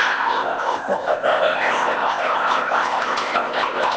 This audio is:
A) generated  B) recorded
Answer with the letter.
A